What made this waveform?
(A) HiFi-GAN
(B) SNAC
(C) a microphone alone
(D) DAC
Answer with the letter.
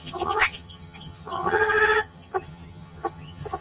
A